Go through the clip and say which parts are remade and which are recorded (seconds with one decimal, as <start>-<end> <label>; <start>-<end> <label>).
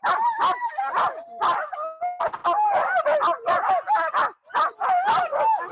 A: 0.0-5.7 recorded